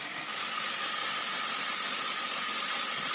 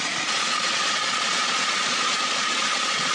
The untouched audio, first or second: first